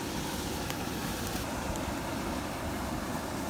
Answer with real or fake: real